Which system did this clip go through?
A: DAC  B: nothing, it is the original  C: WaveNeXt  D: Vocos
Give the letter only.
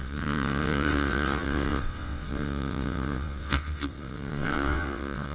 C